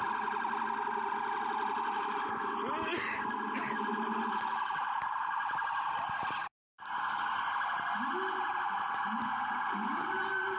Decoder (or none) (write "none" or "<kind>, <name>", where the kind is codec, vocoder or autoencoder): none